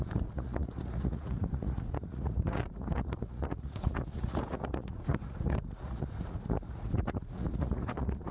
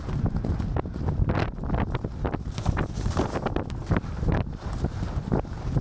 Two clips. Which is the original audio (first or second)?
second